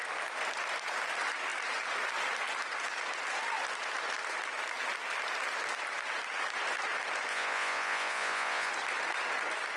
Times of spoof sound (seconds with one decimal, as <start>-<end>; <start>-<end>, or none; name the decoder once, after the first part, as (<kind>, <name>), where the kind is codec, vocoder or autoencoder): 7.3-8.7 (vocoder, Vocos)